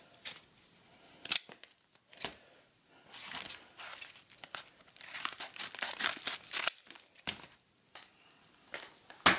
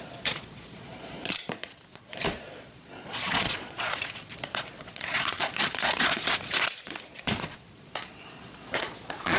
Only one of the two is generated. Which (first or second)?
second